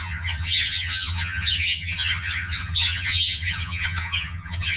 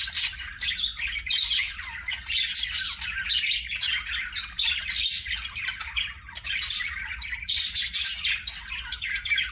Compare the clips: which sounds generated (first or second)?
first